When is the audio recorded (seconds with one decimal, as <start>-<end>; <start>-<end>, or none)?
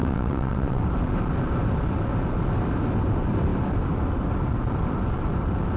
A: 0.8-5.8